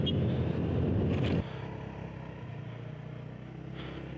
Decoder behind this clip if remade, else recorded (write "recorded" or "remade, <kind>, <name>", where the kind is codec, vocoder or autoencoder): recorded